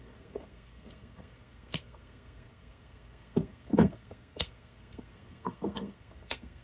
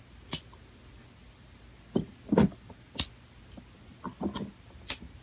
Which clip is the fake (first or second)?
first